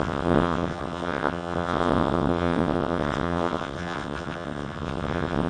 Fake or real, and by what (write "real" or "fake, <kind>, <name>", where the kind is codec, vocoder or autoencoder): fake, vocoder, WaveNeXt